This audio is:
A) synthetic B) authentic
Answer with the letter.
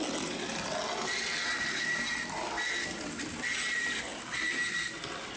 B